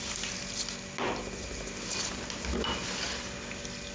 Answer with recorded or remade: recorded